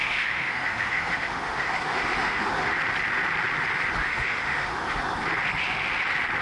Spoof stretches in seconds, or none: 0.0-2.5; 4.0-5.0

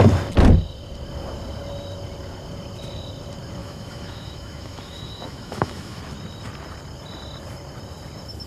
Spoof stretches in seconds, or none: 3.6-6.0

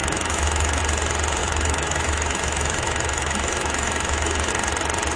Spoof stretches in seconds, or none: 0.0-0.8; 1.4-4.5

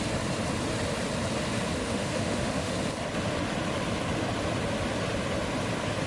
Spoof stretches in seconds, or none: 1.8-2.7